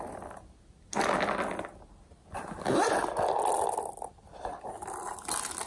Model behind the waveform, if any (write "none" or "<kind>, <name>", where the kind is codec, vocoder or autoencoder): none